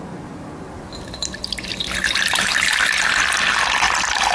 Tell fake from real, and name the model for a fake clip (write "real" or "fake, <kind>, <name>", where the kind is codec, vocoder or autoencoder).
real